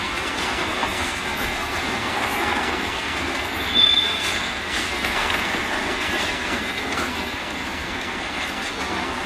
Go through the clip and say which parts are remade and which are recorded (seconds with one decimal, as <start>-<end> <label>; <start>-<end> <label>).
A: 0.0-9.3 remade